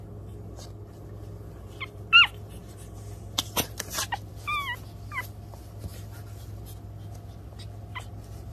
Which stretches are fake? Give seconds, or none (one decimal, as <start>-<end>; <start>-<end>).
none

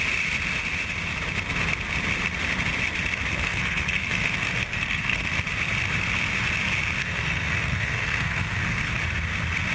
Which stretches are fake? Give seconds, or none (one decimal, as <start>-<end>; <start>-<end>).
3.3-5.3; 7.0-8.9

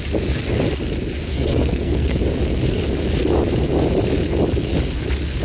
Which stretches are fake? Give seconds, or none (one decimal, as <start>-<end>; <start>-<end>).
1.3-2.2

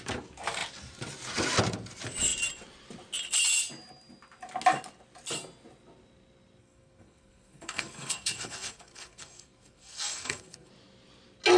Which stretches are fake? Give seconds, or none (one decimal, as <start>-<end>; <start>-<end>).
6.6-10.7

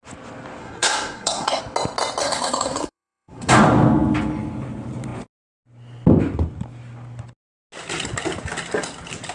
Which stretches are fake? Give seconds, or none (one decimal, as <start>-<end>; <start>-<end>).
0.6-1.6; 2.2-3.5

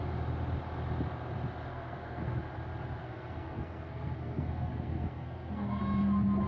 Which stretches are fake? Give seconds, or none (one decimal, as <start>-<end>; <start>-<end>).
1.7-2.4; 3.0-5.8